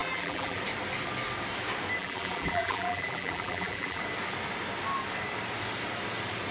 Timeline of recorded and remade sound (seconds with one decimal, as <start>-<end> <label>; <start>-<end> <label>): 0.0-0.6 remade; 0.6-2.0 recorded; 2.0-4.0 remade; 4.0-6.5 recorded